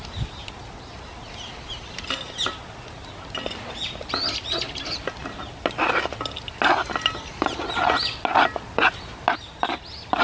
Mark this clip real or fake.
real